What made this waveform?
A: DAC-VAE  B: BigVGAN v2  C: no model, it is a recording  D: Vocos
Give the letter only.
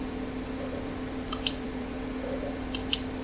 B